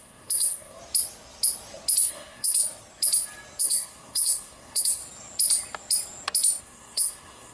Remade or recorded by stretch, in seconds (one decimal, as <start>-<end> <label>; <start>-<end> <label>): 0.0-0.8 remade; 0.8-2.1 recorded; 2.1-2.6 remade; 2.6-3.6 recorded; 3.6-5.0 remade; 5.0-6.6 recorded; 6.6-7.5 remade